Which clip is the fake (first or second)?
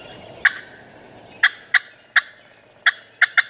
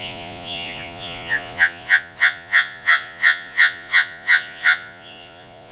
second